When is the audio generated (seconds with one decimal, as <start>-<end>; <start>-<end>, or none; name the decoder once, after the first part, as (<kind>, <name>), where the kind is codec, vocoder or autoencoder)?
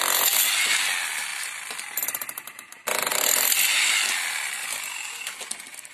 none